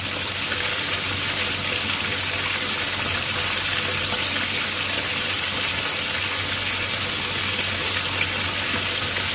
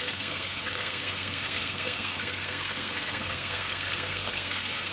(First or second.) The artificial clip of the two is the second